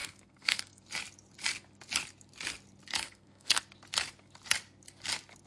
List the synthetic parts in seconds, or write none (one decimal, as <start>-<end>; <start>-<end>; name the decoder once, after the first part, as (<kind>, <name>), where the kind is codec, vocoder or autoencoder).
0.0-0.8 (codec, SNAC); 3.0-3.6